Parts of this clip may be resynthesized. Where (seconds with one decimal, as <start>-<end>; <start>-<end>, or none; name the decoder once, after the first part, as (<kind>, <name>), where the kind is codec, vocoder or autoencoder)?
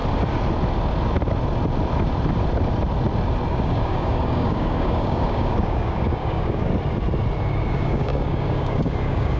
3.5-6.7 (codec, DAC); 7.4-9.4